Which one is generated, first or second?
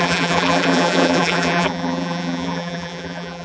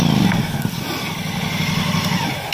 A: first